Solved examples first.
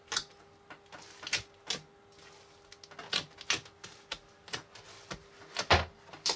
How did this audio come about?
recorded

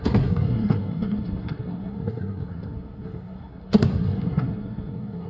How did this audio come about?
remade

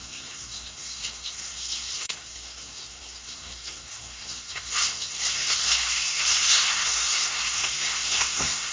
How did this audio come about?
remade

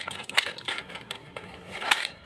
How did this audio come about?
remade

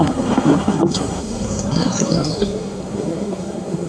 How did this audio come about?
remade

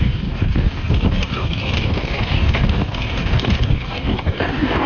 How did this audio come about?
remade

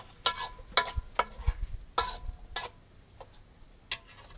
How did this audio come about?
recorded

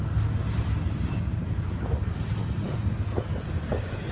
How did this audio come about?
recorded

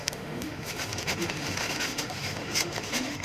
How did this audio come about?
remade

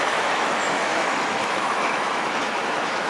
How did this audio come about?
remade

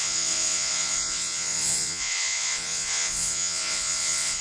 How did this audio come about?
remade